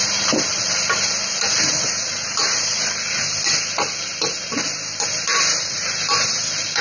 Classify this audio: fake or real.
real